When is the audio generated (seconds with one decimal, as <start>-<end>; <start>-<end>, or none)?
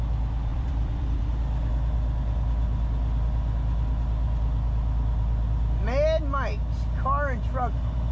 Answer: 0.5-1.2